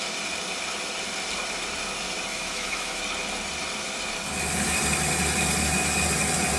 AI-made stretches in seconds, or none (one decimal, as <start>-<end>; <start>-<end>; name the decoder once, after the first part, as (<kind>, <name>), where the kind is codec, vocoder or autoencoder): 2.3-3.0 (autoencoder, DAC-VAE)